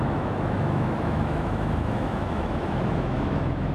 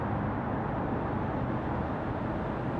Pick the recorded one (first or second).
second